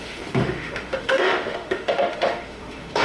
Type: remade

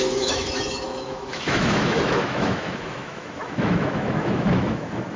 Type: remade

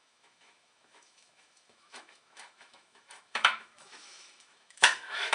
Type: remade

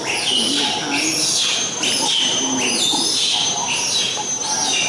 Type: recorded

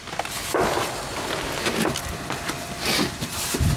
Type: recorded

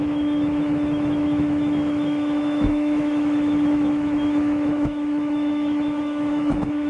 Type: remade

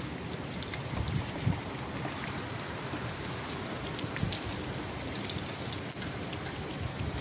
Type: recorded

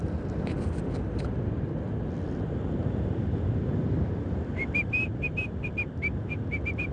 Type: recorded